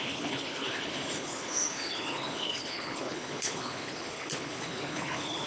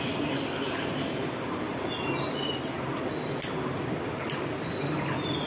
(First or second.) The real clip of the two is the second